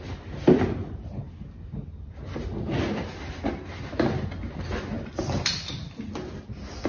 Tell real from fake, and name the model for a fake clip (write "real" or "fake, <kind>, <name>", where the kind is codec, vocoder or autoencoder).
real